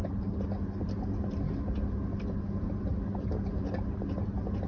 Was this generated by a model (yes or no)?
no